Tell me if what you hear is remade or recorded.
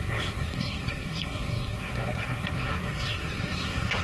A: remade